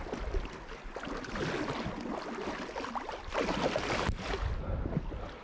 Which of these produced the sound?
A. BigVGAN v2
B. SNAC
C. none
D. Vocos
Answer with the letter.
C